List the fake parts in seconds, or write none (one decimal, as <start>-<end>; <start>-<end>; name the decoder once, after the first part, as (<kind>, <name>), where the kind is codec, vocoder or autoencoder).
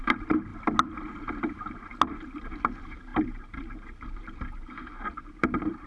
0.0-0.5 (vocoder, BigVGAN v2); 1.2-1.9; 2.4-5.9